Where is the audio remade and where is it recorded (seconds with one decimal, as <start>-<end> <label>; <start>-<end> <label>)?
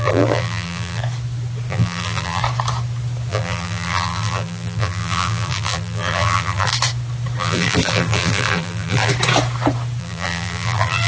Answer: 0.0-1.0 remade; 1.0-1.7 recorded; 1.7-2.4 remade; 2.4-3.3 recorded; 3.3-6.7 remade; 6.7-7.4 recorded; 7.4-9.1 remade; 9.1-10.0 recorded; 10.0-11.1 remade